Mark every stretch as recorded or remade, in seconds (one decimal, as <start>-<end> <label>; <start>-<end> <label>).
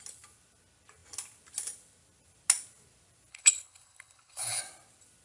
0.0-3.3 recorded; 3.3-4.6 remade; 4.6-5.2 recorded